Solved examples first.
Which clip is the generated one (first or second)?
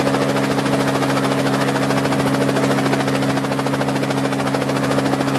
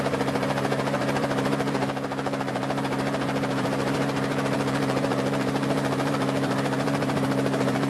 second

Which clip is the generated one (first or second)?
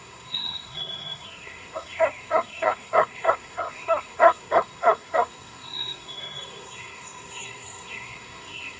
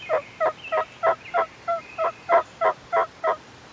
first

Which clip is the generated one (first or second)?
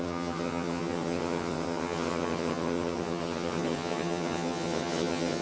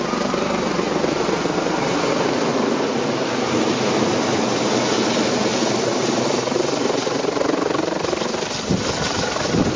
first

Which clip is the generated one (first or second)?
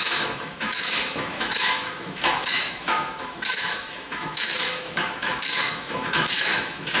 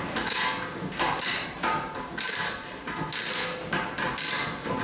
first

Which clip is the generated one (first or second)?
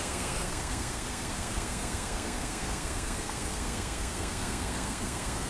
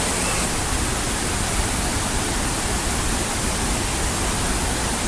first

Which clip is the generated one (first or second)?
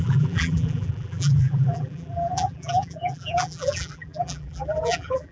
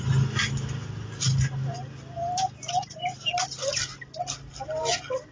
first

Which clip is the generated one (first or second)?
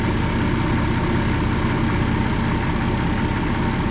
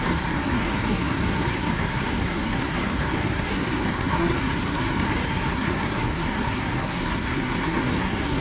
second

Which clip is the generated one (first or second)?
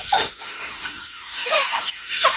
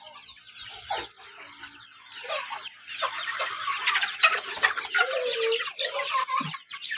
first